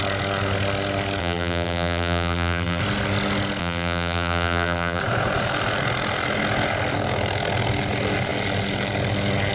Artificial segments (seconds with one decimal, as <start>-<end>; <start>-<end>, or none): 1.2-2.8; 3.6-5.0